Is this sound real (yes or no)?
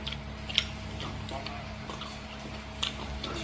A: yes